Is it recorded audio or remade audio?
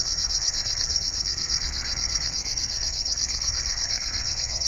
remade